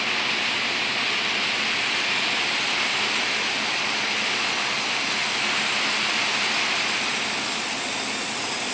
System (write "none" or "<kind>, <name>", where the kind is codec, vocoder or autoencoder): none